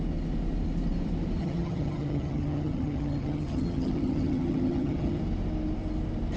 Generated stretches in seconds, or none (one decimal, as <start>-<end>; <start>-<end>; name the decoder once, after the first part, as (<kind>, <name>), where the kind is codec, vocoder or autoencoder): 1.4-5.2 (vocoder, HiFi-GAN)